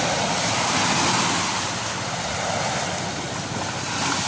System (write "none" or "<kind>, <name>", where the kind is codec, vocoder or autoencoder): none